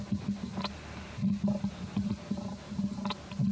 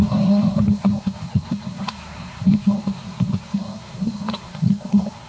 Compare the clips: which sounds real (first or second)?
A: first